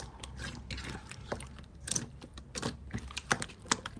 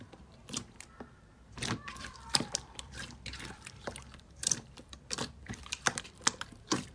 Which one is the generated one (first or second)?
second